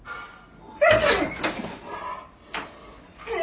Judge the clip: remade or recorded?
recorded